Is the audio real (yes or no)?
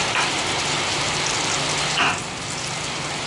yes